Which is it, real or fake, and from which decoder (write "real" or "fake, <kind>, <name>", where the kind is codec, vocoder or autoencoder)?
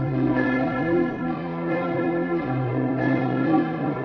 fake, vocoder, Vocos